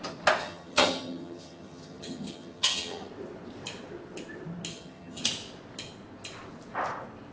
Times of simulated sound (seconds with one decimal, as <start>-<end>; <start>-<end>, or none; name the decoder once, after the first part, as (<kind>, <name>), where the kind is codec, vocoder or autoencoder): 0.4-3.1 (vocoder, HiFi-GAN); 4.7-5.2